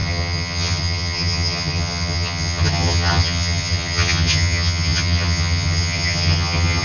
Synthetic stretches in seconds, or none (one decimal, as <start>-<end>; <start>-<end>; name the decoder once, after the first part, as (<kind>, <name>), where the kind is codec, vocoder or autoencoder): 0.0-6.8 (vocoder, HiFi-GAN)